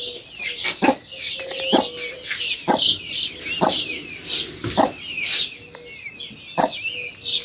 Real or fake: real